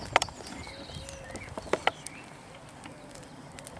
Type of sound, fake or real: real